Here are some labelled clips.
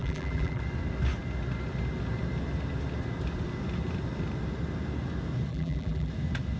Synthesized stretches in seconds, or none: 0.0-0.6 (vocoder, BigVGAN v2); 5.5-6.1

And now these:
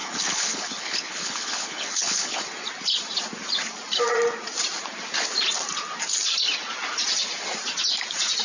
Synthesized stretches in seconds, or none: 0.0-2.4 (codec, HILCodec)

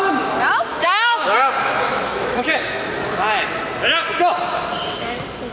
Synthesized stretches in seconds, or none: 0.7-3.0 (autoencoder, DAC-VAE)

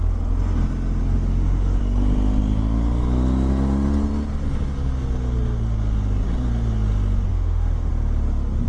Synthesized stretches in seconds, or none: 1.0-1.8 (autoencoder, DAC-VAE); 7.3-7.9

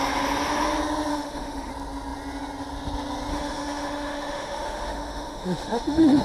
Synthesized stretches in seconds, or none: 1.1-1.7 (autoencoder, DAC-VAE); 3.3-6.2